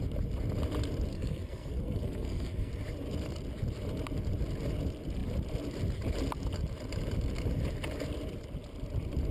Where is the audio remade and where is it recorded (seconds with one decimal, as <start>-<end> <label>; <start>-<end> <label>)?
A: 0.0-1.1 recorded; 1.1-2.7 remade; 2.7-9.3 recorded